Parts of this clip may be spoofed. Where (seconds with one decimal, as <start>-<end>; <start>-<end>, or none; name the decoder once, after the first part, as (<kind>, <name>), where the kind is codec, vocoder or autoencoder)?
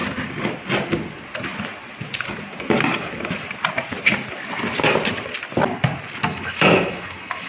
6.3-7.5 (autoencoder, DAC-VAE)